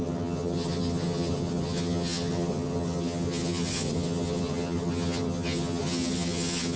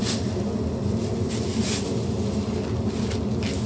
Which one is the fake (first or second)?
first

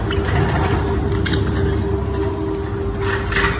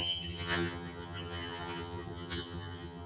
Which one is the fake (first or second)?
second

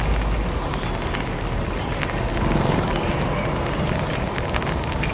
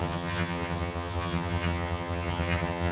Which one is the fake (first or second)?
second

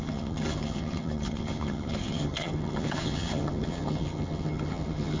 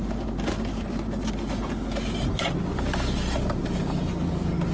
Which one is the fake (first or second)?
first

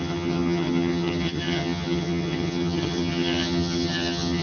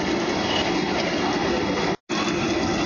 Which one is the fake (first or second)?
first